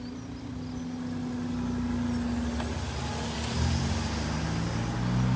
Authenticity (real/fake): real